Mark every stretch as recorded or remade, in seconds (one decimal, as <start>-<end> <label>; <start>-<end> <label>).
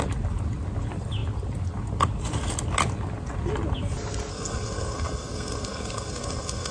0.0-4.3 recorded; 4.3-6.7 remade